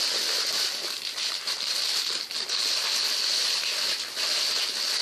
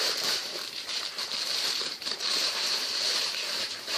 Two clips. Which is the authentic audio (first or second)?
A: first